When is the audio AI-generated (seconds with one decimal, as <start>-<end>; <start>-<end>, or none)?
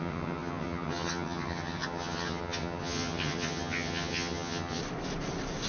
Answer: 0.0-4.8